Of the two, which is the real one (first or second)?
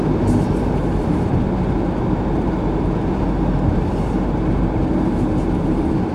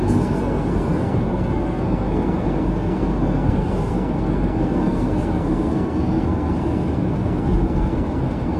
first